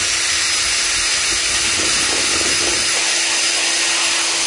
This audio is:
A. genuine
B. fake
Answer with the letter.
A